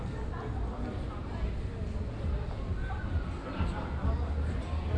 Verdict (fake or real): real